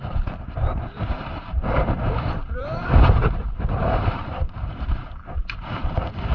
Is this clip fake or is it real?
fake